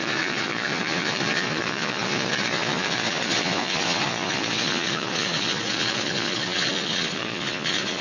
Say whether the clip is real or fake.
fake